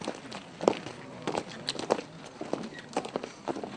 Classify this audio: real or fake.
real